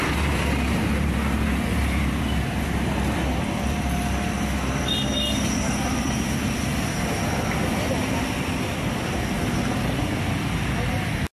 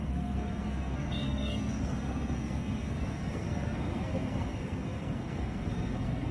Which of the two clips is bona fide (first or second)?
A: first